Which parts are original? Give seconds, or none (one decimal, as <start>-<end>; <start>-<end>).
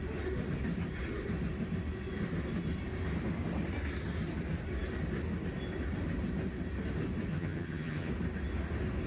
0.0-7.3; 8.1-9.1